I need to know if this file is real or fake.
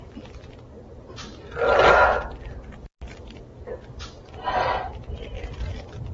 real